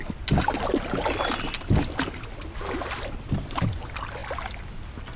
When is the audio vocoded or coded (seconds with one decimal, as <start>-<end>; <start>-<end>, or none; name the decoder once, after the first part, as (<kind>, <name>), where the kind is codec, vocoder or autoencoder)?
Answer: none